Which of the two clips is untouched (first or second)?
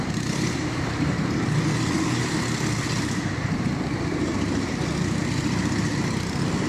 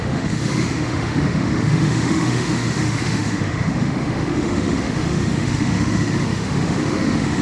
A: first